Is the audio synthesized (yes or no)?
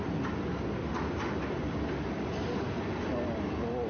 no